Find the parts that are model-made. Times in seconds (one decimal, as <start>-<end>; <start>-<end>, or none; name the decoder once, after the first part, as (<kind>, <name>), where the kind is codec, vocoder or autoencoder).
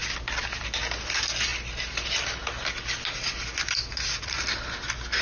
3.9-4.4 (vocoder, Vocos)